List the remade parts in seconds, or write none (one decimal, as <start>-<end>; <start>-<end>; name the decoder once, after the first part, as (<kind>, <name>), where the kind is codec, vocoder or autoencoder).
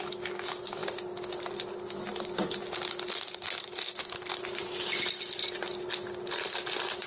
none